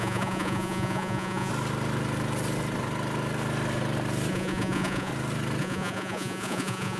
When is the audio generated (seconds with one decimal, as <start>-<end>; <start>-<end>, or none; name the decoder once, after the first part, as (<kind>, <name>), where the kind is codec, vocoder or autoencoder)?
0.0-1.5 (vocoder, Vocos); 4.3-5.1; 5.6-7.0